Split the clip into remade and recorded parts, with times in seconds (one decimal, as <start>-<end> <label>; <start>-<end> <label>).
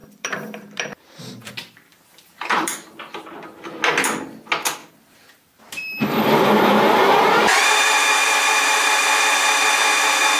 0.0-1.5 remade; 1.5-1.9 recorded; 1.9-2.9 remade; 2.9-4.8 recorded; 4.8-9.2 remade; 9.2-10.4 recorded